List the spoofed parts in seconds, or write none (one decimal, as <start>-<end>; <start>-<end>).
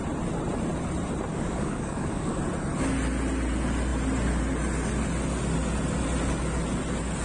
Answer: 1.3-2.4